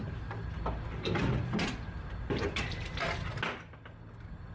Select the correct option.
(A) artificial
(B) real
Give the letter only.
B